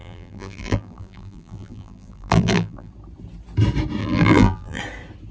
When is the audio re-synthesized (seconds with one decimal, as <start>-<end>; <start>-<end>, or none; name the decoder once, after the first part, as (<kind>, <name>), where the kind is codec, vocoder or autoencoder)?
0.0-2.9 (vocoder, BigVGAN v2); 4.0-4.8

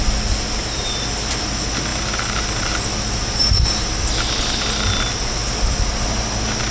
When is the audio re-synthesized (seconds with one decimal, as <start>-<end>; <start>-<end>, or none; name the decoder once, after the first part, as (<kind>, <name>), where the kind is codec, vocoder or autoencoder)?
none

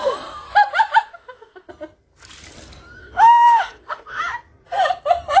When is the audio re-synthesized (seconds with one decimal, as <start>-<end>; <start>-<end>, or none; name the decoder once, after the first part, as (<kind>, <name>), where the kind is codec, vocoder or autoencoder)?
1.0-1.7 (autoencoder, DAC-VAE); 3.0-4.3

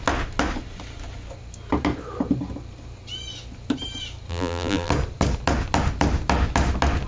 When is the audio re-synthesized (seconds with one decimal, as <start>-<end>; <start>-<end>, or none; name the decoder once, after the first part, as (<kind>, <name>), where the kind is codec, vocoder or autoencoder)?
4.3-4.9 (vocoder, BigVGAN v2)

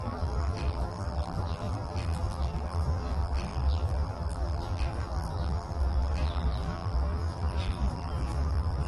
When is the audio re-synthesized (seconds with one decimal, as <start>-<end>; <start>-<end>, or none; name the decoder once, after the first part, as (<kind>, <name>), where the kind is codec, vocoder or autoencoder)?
0.0-8.9 (vocoder, BigVGAN v2)

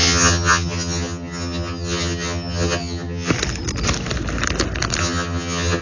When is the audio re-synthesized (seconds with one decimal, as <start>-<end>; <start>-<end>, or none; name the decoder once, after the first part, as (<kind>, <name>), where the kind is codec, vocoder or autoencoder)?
0.0-3.3 (vocoder, HiFi-GAN); 5.0-5.8

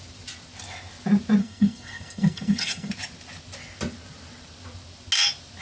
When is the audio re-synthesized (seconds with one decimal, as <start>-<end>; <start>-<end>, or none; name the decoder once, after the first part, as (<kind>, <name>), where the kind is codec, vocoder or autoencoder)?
1.4-2.9 (codec, SNAC)

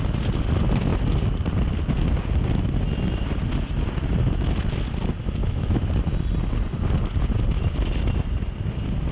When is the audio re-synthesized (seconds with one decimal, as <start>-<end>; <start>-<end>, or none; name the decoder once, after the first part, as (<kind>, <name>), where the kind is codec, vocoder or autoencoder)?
5.4-5.9 (autoencoder, DAC-VAE)